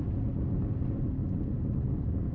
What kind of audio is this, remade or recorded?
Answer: recorded